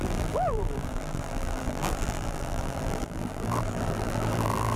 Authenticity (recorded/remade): remade